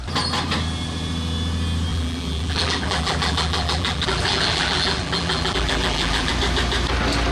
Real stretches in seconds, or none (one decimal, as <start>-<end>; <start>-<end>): 0.0-1.9; 6.3-7.3

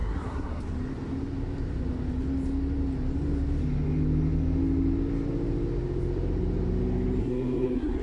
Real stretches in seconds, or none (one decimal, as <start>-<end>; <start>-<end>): 0.6-7.2

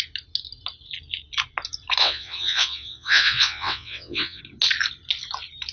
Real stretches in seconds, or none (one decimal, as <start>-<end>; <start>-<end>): 0.0-2.0; 4.4-5.7

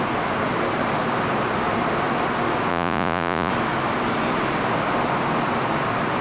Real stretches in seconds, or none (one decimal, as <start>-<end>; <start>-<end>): 0.0-2.7; 3.5-6.2

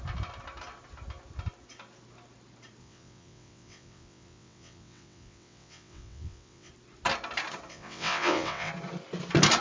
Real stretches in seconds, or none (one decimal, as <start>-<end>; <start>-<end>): 0.0-2.8; 6.7-7.7; 8.7-9.6

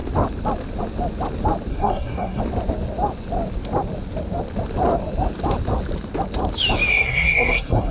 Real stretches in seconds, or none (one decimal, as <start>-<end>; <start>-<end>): 0.0-1.7; 2.4-6.9

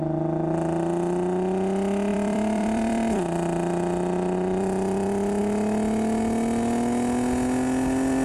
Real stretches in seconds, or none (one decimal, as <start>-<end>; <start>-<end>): 0.0-2.1; 5.4-8.2